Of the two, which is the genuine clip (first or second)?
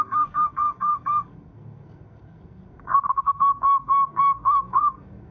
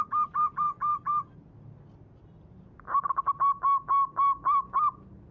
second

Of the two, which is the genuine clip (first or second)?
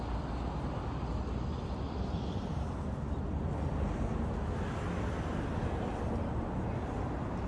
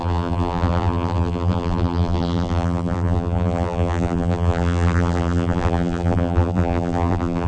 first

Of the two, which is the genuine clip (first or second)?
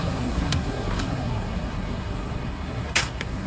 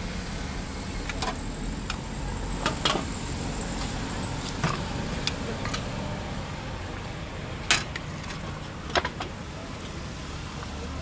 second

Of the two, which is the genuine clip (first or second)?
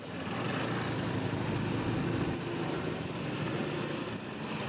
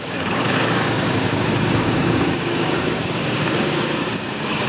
first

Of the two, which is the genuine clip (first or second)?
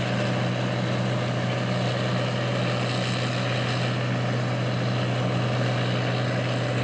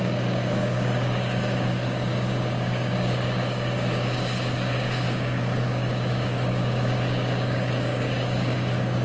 first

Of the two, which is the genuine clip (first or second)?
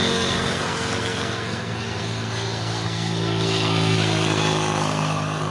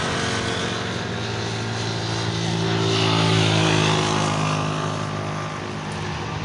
second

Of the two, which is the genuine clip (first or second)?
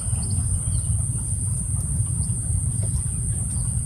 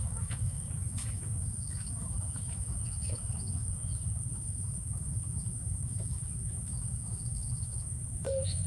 first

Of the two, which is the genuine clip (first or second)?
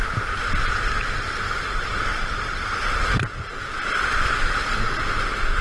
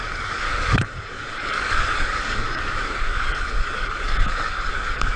first